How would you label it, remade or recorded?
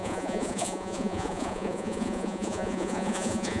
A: remade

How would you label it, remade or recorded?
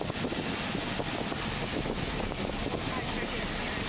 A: recorded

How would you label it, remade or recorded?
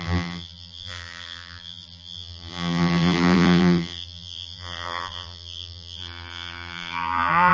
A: remade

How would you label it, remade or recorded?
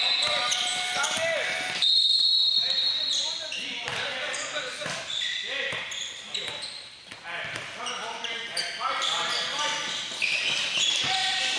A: remade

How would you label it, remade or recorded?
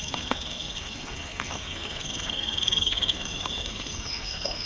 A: remade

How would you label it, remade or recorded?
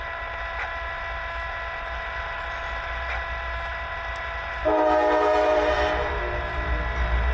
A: recorded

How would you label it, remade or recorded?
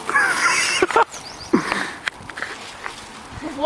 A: recorded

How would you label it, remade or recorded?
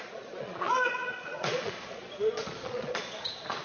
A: remade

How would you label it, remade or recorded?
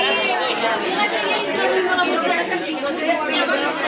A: recorded